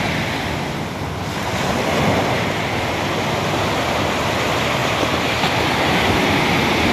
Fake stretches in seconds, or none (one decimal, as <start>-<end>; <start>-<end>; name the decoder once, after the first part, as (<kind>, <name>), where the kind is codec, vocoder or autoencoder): 4.8-6.4 (vocoder, BigVGAN v2)